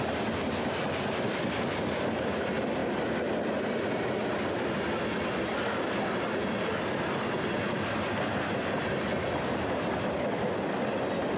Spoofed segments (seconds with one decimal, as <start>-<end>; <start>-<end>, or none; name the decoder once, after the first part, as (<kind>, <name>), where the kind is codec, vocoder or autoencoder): none